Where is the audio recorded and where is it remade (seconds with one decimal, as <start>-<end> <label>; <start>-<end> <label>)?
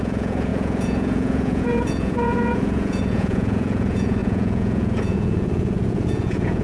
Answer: 0.0-6.6 remade